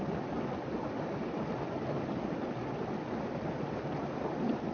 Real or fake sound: real